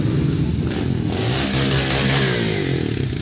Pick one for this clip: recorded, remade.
recorded